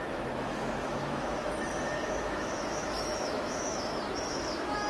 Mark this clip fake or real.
fake